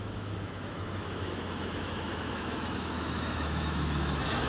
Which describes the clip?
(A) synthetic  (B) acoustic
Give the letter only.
A